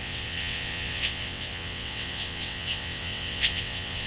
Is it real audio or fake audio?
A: fake